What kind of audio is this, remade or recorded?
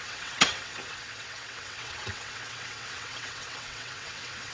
remade